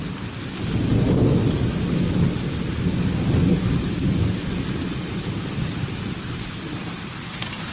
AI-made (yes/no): no